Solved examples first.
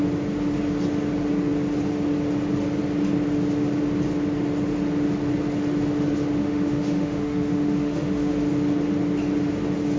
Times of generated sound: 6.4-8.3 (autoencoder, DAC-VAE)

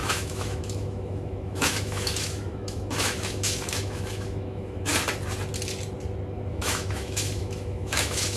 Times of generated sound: 0.0-4.9 (autoencoder, DAC-VAE); 6.5-8.4

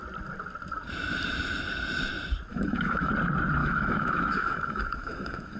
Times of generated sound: 2.5-3.1 (autoencoder, DAC-VAE); 3.6-5.6